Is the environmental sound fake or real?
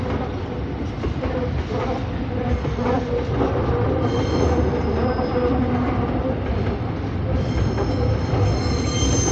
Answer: real